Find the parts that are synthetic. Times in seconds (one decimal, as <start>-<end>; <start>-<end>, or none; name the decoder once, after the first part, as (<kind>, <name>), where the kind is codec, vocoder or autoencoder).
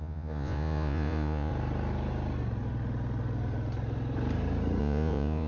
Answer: 0.0-1.5 (vocoder, Vocos); 4.8-5.5